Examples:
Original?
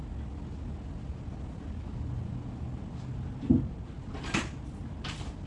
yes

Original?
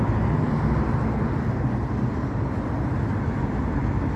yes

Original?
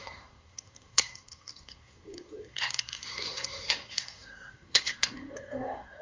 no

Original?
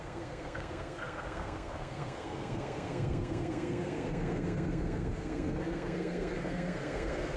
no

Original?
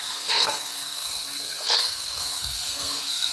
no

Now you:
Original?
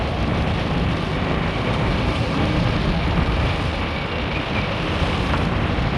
yes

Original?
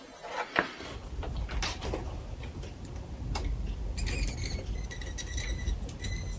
yes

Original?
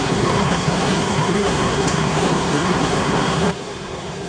no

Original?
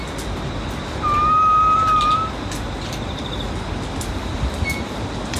yes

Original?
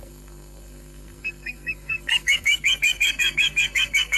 no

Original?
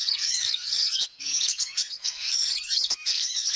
no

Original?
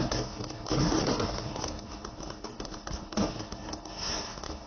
no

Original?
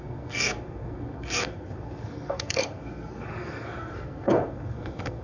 no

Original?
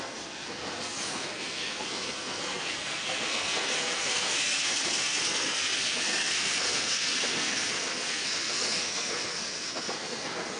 no